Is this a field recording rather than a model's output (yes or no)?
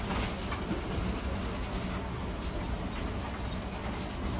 yes